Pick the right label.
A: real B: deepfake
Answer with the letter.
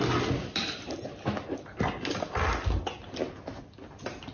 A